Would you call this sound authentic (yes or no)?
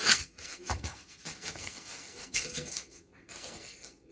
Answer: no